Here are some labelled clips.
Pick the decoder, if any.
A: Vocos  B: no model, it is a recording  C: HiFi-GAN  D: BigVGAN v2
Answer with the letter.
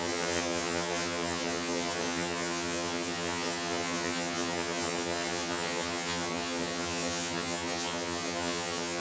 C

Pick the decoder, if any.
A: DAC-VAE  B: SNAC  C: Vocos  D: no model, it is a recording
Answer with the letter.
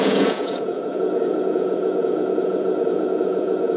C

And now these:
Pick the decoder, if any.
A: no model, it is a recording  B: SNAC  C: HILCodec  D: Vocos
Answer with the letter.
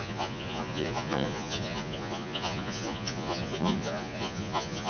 D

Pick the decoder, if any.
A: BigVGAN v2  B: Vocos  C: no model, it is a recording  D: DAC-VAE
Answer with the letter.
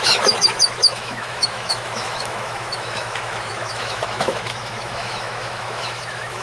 D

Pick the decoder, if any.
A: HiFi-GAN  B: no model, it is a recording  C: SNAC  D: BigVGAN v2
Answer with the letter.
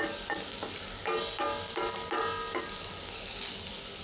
B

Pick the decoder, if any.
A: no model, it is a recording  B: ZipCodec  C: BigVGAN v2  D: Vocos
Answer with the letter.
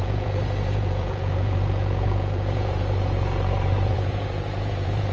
D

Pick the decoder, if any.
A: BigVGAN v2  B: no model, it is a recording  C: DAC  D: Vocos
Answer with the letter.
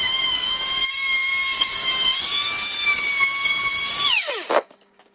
C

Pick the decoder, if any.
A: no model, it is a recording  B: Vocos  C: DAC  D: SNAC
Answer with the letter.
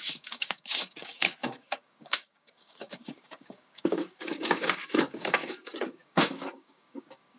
C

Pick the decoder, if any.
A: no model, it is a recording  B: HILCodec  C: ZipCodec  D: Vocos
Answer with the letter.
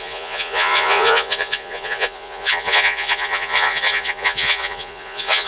D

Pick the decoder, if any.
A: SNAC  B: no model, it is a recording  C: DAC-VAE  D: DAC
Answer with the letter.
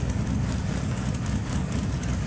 D